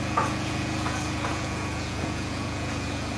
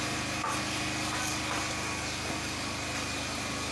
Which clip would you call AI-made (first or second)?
first